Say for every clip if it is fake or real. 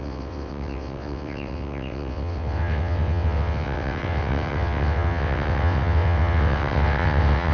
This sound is fake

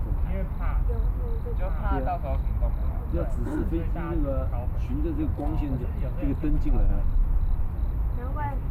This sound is real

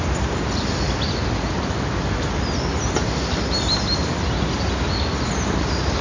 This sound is real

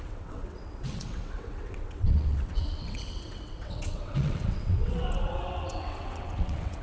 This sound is fake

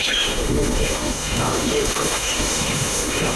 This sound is fake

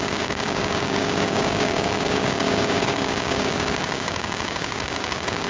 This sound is fake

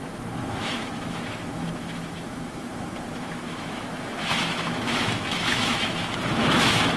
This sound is fake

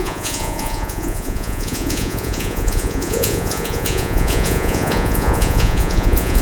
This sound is fake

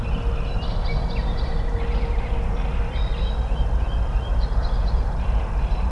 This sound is real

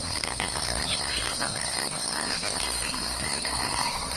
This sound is fake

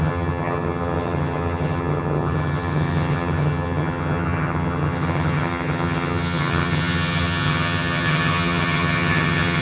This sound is fake